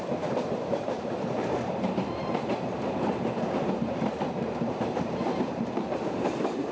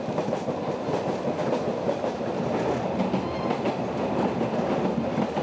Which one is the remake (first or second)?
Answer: first